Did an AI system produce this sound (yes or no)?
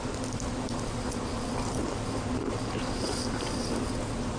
no